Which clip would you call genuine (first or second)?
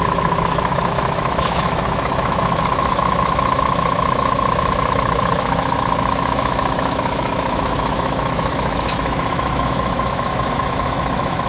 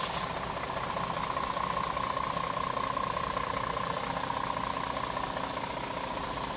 second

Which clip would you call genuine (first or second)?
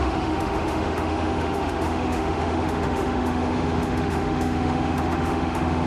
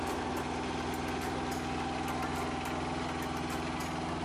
second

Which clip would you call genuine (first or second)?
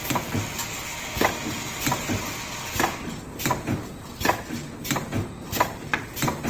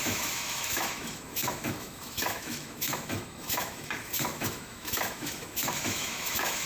first